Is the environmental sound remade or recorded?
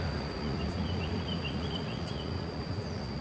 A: remade